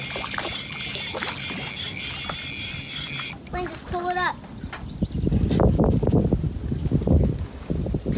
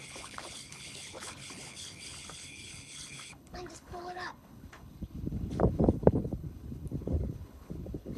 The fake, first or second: second